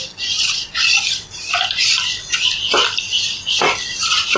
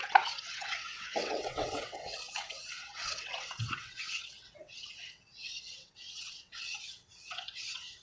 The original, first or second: first